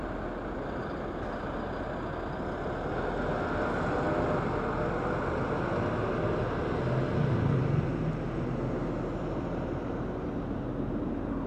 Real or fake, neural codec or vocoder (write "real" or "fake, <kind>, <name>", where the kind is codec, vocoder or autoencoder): real